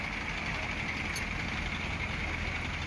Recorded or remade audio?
recorded